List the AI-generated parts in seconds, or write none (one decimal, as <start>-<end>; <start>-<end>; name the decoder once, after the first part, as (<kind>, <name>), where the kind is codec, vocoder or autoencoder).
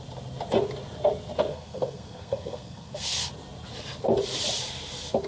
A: 1.5-3.3 (codec, SNAC)